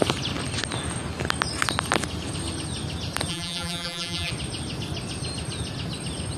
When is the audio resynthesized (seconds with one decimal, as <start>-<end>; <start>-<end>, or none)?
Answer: 3.3-4.3